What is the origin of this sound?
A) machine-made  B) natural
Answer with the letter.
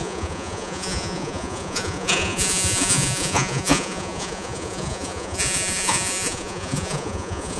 A